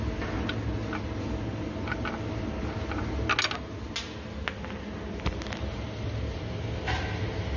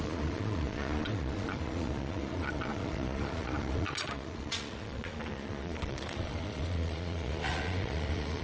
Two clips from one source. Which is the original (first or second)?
first